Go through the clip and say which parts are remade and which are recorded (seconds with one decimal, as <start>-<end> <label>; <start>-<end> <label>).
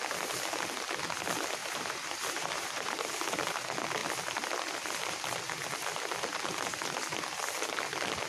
0.0-1.6 recorded; 1.6-3.1 remade; 3.1-8.3 recorded